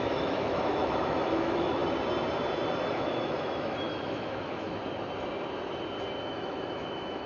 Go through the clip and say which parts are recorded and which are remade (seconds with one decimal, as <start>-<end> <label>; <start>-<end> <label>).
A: 0.0-1.8 remade; 1.8-2.9 recorded; 2.9-4.8 remade; 4.8-6.2 recorded; 6.2-7.3 remade